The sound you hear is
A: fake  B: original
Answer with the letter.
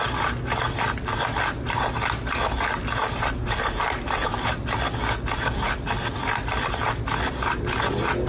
B